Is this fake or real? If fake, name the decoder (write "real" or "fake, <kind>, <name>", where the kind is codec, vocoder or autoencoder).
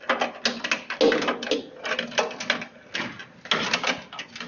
real